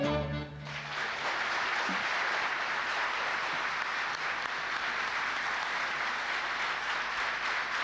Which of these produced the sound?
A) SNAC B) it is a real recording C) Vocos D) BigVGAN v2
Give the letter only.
B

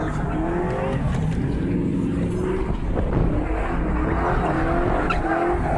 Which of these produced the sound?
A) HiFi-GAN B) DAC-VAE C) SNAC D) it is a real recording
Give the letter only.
D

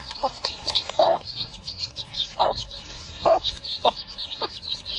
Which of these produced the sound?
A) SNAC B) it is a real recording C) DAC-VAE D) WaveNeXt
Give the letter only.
A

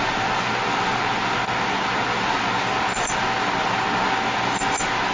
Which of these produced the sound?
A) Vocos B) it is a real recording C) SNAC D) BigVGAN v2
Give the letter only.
B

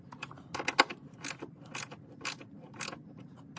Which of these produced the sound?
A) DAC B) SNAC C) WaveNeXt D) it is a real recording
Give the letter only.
D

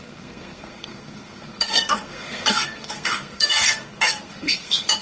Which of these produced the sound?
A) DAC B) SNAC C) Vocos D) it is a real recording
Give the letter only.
B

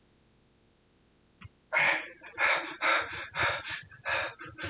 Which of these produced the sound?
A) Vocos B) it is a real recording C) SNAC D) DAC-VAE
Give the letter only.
B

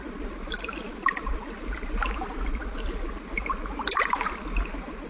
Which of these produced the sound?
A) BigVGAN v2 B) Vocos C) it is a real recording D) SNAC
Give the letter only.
C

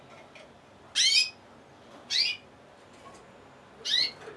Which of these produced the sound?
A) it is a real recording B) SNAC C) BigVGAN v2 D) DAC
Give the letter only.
A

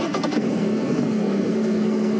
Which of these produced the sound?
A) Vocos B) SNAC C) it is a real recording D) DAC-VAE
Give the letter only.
B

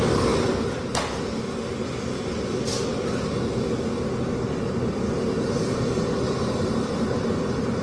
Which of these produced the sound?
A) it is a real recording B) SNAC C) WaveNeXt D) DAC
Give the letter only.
A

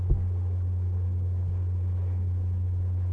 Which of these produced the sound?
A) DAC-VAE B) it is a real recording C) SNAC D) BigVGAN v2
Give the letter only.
B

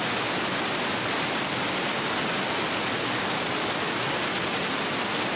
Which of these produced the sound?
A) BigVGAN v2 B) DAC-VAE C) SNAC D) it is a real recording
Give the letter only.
D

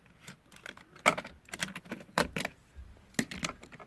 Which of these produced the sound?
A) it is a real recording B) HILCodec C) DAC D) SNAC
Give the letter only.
A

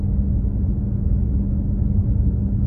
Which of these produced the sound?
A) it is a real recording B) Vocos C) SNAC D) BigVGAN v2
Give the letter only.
A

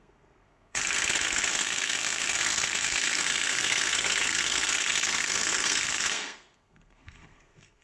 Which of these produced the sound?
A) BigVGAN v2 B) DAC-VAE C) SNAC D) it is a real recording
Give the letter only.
C